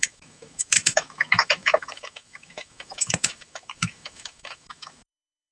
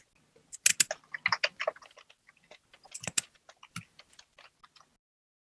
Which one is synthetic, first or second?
first